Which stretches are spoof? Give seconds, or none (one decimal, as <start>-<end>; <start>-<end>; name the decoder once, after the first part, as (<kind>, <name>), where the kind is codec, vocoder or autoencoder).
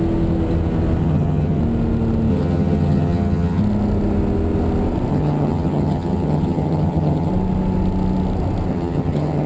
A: 1.0-1.6 (vocoder, HiFi-GAN); 2.3-3.6; 5.1-7.3; 8.7-9.5